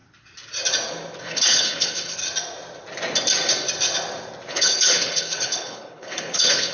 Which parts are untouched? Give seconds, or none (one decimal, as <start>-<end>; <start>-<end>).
0.0-1.2; 2.2-4.5